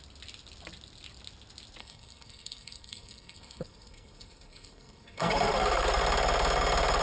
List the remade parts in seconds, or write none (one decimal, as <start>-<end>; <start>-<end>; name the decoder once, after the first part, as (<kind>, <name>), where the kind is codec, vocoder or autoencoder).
1.8-6.0 (codec, SNAC)